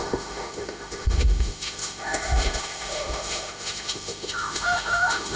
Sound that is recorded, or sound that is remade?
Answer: remade